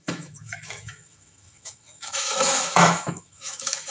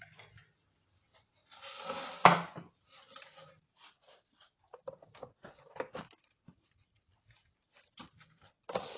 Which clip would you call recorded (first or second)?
second